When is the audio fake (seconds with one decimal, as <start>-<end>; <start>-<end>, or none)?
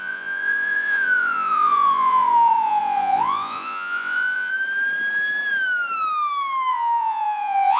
0.0-4.5; 6.7-7.8